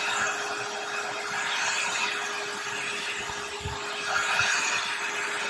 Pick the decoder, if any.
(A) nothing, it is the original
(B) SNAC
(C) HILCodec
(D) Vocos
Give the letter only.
A